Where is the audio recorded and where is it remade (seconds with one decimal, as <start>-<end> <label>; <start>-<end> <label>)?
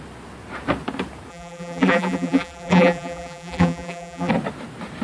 0.0-1.3 recorded; 1.3-4.3 remade; 4.3-5.0 recorded